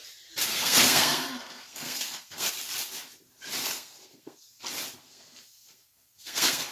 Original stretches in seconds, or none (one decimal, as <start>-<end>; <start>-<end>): 0.0-0.5; 2.5-3.6; 4.6-5.0

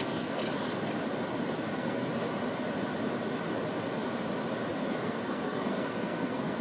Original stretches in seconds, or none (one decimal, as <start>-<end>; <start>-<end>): 0.4-1.7; 2.1-4.7

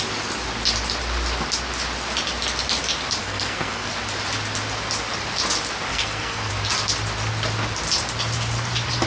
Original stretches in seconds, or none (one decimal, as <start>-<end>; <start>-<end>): 0.0-3.2; 3.9-5.9; 6.5-9.1

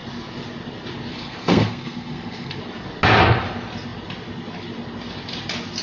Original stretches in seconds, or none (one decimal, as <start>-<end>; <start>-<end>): 0.0-1.1; 2.6-5.8

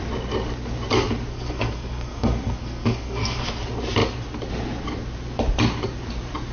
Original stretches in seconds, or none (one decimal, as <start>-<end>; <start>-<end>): 0.0-1.3; 3.4-6.5